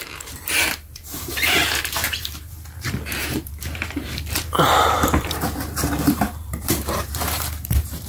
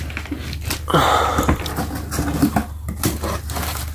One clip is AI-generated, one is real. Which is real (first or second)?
second